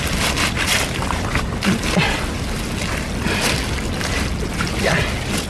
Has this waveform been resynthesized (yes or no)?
no